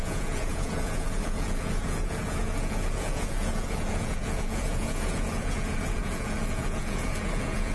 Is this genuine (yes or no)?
no